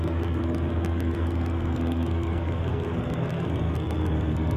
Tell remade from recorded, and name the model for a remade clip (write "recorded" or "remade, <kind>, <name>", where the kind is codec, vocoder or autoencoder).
remade, codec, SNAC